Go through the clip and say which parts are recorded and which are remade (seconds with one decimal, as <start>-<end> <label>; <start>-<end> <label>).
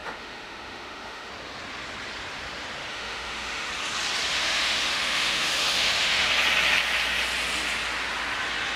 0.0-1.3 remade; 1.3-2.9 recorded; 2.9-3.7 remade; 3.7-4.3 recorded; 4.3-6.3 remade; 6.3-8.8 recorded